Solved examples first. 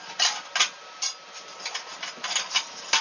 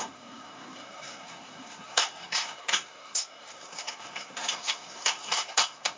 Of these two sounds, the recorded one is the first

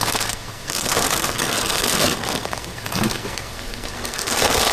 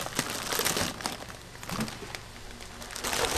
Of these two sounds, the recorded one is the second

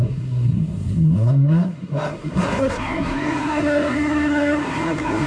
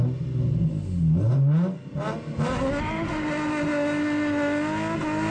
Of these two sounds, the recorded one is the second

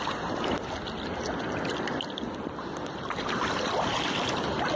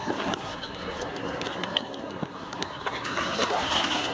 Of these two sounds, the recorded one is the first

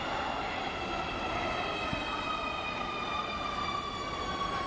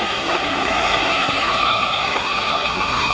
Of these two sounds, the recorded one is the first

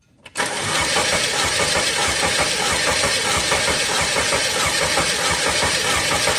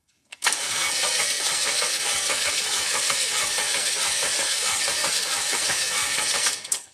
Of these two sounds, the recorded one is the first